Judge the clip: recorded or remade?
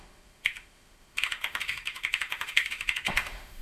remade